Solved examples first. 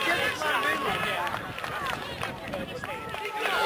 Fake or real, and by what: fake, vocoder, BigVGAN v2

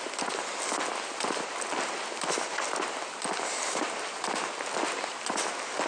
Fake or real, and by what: real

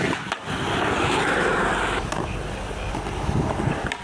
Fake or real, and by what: real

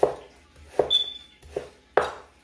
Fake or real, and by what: real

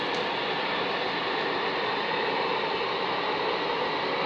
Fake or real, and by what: real